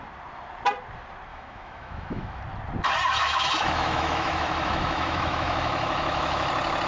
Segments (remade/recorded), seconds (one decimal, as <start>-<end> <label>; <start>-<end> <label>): 0.0-1.3 recorded; 1.3-2.4 remade; 2.4-3.2 recorded; 3.2-6.5 remade; 6.5-6.9 recorded